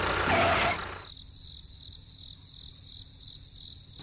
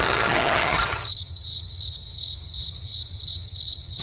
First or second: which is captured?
first